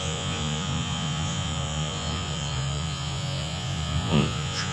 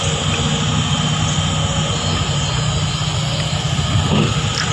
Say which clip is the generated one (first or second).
first